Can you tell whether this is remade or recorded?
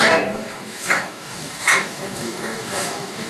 remade